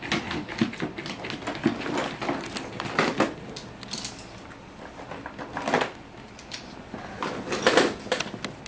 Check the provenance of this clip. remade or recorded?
recorded